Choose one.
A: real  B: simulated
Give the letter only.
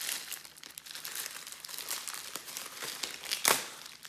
A